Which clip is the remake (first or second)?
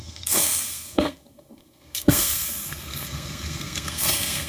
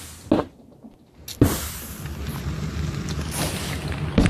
first